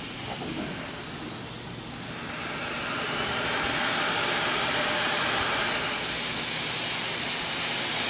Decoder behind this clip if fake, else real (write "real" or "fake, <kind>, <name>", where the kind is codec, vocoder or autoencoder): real